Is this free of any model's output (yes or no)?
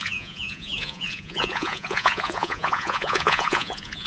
no